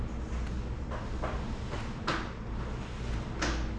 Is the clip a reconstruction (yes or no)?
no